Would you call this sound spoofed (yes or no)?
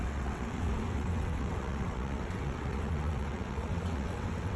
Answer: yes